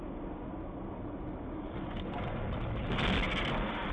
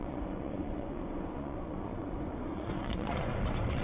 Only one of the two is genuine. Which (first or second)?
first